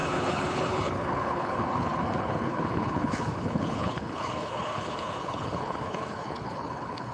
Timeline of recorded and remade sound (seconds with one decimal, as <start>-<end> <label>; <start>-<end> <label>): 0.0-7.1 remade